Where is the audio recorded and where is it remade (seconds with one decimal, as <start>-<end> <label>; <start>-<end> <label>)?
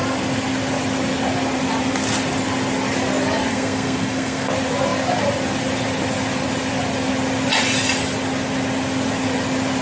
0.0-3.5 recorded; 3.5-4.5 remade; 4.5-9.8 recorded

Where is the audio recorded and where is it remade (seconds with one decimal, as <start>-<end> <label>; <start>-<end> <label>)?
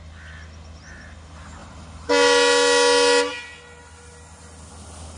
0.0-5.2 recorded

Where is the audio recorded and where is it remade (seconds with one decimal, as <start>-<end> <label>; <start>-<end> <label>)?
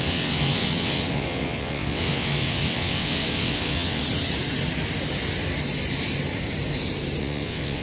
0.0-4.0 remade; 4.0-7.2 recorded; 7.2-7.8 remade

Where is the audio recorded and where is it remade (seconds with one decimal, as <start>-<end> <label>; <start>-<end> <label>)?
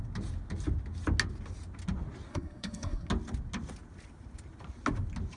0.0-2.3 recorded; 2.3-3.1 remade; 3.1-5.4 recorded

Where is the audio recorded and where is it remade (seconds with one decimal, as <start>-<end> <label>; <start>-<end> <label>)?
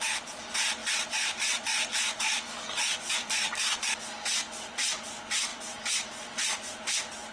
0.0-7.3 recorded